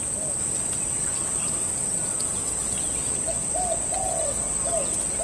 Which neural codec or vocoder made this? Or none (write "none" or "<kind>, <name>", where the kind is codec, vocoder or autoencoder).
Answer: none